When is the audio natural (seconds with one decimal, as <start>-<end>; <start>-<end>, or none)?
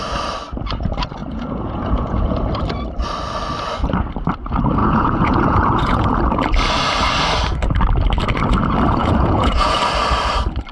0.0-1.2; 2.3-4.8; 6.2-9.0; 9.8-10.7